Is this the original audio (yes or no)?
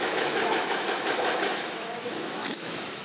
no